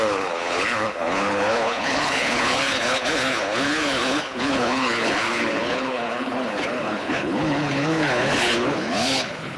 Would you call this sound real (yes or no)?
no